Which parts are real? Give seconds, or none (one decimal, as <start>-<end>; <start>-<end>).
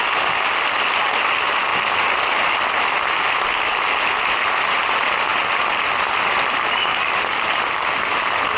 0.0-8.6